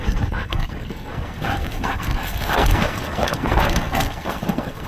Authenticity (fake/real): fake